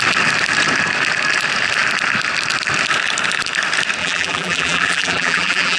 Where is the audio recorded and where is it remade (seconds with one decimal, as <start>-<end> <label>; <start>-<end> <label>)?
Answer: 0.0-4.0 recorded; 4.0-5.8 remade

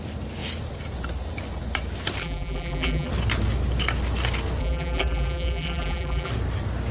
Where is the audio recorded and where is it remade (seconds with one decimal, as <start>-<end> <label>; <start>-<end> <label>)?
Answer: 0.0-2.2 recorded; 2.2-3.1 remade; 3.1-4.6 recorded; 4.6-6.3 remade; 6.3-6.9 recorded

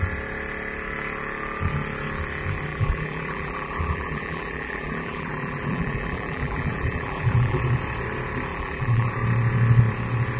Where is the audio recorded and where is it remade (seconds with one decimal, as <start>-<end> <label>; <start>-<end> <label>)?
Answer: 0.0-2.7 recorded; 2.7-7.6 remade; 7.6-8.5 recorded; 8.5-9.1 remade; 9.1-10.4 recorded

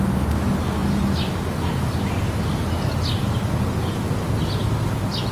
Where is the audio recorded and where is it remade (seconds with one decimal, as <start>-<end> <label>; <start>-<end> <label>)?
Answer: 0.0-5.3 recorded

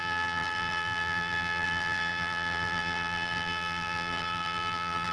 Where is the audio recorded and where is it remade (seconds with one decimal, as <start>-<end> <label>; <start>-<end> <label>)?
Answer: 0.0-5.1 remade